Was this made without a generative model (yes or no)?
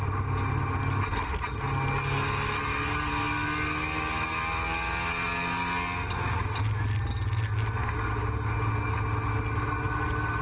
yes